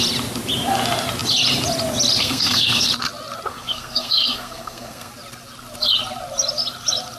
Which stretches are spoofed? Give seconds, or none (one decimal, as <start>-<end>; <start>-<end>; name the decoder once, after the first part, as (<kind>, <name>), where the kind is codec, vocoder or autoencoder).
2.2-2.9 (codec, SNAC); 3.5-5.1